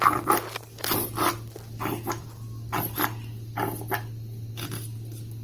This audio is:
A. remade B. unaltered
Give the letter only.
B